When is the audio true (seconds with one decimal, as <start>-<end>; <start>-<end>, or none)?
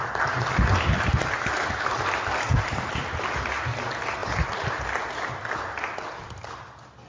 0.0-7.1